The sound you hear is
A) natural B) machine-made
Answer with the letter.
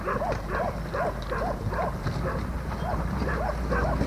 A